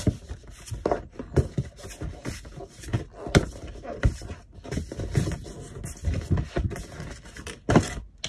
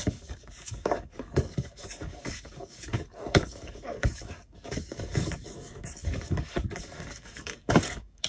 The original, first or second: first